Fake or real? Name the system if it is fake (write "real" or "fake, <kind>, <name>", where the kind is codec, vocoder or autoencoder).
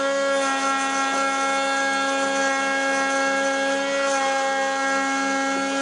real